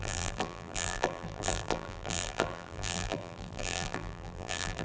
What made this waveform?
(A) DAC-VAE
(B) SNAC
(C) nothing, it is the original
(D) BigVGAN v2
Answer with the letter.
D